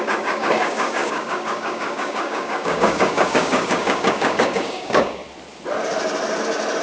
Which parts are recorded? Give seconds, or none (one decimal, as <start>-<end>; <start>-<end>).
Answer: 5.2-6.8